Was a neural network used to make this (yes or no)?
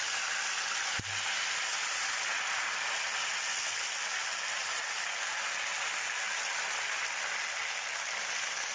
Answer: no